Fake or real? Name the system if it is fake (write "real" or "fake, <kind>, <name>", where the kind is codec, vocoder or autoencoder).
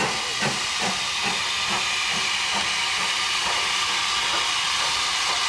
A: real